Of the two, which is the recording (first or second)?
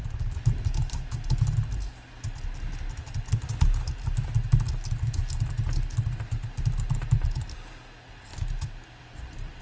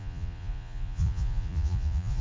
first